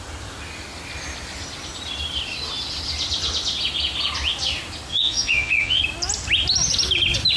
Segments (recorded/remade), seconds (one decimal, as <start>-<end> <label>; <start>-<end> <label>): 0.0-4.9 recorded; 4.9-5.8 remade; 5.8-7.4 recorded